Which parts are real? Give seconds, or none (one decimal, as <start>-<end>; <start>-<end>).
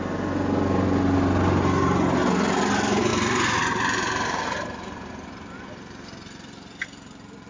0.0-3.1